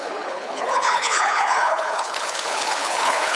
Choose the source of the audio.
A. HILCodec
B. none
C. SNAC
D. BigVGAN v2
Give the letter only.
A